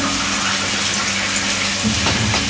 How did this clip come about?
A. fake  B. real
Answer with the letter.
B